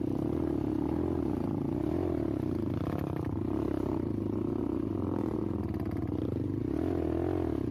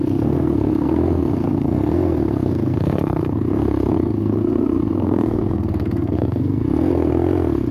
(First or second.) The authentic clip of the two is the first